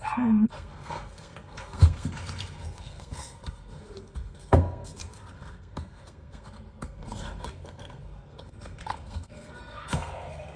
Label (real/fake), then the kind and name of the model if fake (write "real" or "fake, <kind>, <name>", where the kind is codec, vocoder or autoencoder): fake, codec, SNAC